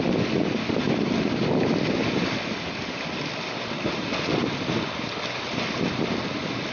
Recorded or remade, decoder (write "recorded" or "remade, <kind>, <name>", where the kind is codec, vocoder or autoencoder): recorded